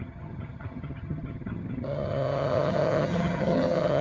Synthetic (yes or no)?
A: yes